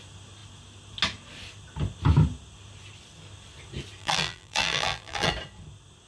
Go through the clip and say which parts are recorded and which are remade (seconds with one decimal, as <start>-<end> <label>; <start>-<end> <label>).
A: 0.0-4.0 recorded; 4.0-5.3 remade; 5.3-6.1 recorded